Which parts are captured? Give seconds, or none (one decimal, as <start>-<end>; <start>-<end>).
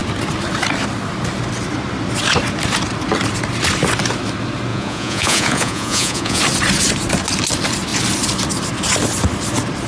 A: 0.0-4.7; 6.4-9.9